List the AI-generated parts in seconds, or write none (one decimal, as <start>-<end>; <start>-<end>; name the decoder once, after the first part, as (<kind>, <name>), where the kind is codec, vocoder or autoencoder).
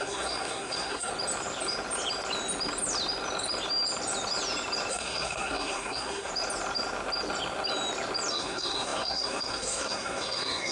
0.0-1.1 (codec, SNAC); 4.9-6.3; 8.3-10.7